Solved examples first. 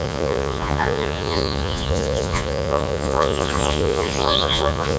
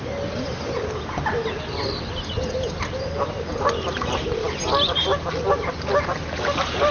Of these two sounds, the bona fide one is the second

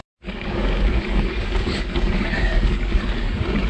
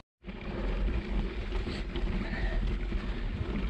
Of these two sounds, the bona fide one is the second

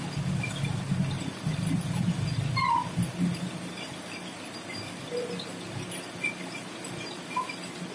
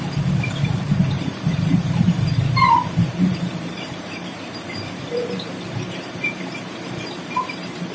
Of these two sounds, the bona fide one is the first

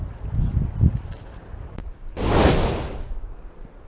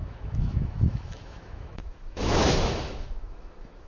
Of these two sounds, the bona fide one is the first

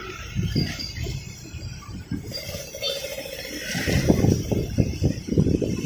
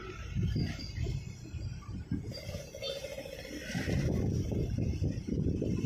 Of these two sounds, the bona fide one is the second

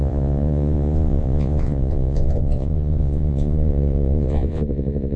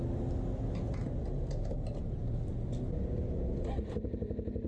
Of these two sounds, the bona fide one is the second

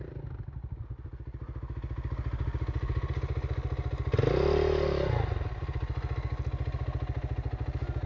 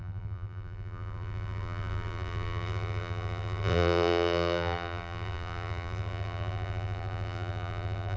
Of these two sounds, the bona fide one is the first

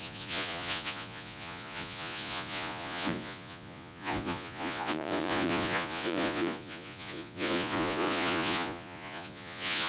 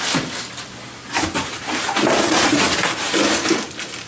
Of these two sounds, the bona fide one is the second